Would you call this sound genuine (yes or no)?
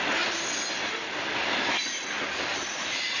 yes